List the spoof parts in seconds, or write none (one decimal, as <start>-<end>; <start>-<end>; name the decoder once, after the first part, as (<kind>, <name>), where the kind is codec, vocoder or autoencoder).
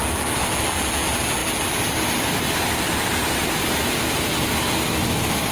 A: none